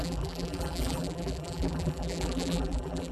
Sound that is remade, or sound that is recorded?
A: remade